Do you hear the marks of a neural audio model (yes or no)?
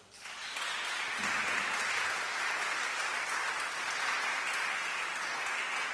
no